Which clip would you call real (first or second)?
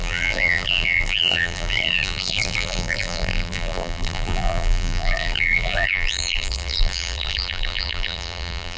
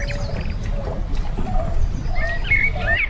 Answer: second